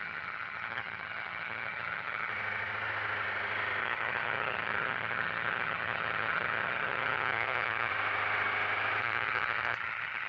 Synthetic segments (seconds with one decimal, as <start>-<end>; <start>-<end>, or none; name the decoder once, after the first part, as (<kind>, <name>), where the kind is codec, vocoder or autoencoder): 0.0-2.3 (vocoder, HiFi-GAN); 3.8-7.9; 9.0-10.3